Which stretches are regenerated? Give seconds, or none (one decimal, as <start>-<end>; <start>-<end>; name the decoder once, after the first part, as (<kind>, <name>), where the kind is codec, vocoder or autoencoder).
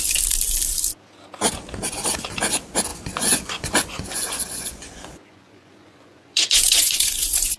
2.9-7.6 (vocoder, Vocos)